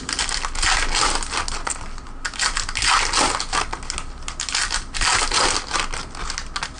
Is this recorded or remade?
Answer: recorded